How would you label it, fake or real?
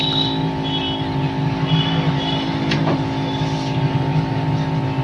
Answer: real